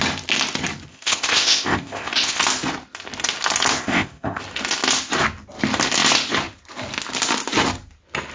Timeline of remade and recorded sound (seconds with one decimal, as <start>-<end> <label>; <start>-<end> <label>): 0.0-0.9 recorded; 0.9-2.4 remade; 2.4-3.8 recorded; 3.8-4.4 remade; 4.4-8.3 recorded